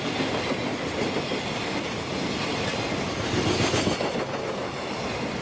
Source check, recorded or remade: recorded